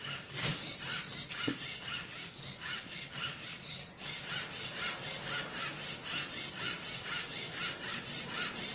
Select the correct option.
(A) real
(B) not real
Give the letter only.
A